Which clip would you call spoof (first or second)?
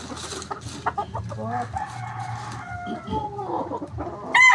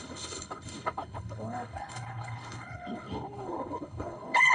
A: second